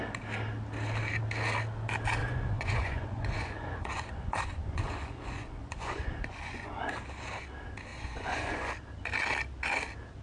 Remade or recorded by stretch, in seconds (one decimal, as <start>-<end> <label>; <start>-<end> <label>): 0.0-2.2 recorded; 2.2-6.8 remade; 6.8-7.9 recorded; 7.9-8.7 remade; 8.7-10.2 recorded